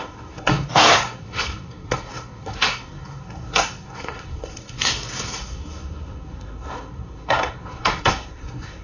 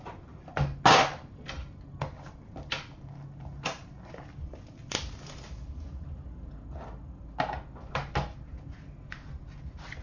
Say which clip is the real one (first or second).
second